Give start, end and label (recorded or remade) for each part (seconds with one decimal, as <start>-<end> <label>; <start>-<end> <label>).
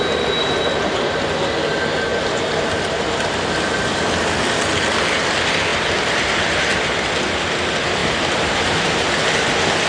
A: 0.0-0.4 recorded; 0.4-1.1 remade; 1.1-8.0 recorded; 8.0-9.2 remade; 9.2-9.9 recorded